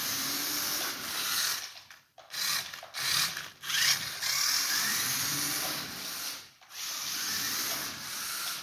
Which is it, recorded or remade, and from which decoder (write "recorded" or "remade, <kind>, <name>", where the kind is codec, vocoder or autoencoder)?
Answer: recorded